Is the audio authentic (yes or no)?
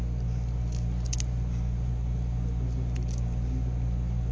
yes